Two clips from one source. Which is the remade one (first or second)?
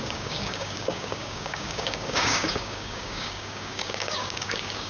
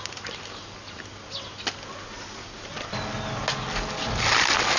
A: first